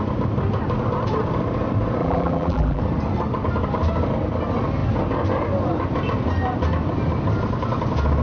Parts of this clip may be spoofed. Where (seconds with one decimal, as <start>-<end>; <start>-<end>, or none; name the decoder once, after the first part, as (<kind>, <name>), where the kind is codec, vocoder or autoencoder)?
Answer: 2.0-2.8 (vocoder, BigVGAN v2)

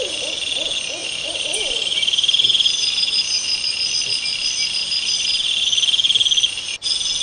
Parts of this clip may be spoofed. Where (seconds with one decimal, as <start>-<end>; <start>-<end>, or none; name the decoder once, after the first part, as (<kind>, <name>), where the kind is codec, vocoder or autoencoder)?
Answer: 1.0-3.9 (vocoder, BigVGAN v2)

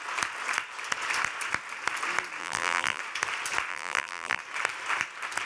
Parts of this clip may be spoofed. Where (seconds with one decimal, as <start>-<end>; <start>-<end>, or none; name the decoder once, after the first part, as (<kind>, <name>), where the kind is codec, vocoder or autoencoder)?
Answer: 2.4-3.0 (vocoder, BigVGAN v2); 3.7-4.4

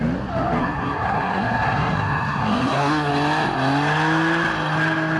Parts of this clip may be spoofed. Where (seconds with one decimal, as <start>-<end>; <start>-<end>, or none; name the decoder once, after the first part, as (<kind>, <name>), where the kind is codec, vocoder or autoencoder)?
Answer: 0.6-3.1 (codec, SNAC)

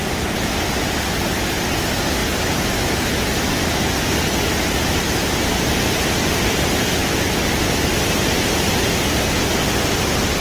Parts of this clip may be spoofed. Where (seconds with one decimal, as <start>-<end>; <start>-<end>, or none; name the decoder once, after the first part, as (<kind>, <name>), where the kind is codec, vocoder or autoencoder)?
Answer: none